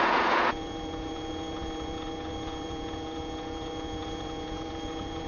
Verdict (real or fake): fake